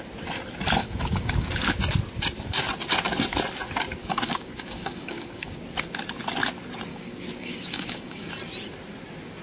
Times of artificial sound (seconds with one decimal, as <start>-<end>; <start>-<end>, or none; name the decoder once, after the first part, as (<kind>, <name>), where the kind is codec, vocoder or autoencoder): 0.8-1.5 (codec, DAC); 4.0-5.6; 6.9-8.3

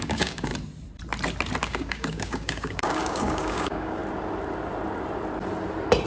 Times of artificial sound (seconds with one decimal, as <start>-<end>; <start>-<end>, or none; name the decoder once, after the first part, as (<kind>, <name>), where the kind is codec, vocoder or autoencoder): 0.0-0.5 (codec, DAC); 1.6-4.0

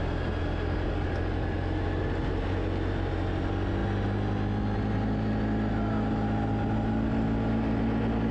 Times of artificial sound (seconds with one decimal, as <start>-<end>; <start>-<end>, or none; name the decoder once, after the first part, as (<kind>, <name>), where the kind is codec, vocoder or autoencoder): none